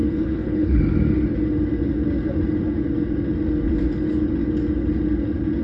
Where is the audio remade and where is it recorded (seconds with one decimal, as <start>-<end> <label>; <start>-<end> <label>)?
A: 0.0-0.8 remade; 0.8-5.6 recorded